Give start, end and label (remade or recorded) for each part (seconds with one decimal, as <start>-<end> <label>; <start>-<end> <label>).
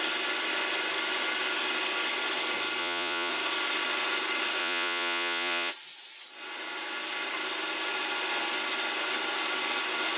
0.0-2.8 recorded; 2.8-3.3 remade; 3.3-4.6 recorded; 4.6-5.7 remade; 5.7-10.2 recorded